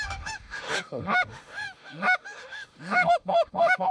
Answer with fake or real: fake